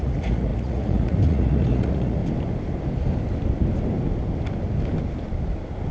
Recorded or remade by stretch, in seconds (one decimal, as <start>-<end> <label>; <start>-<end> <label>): 0.0-2.2 remade; 2.2-5.9 recorded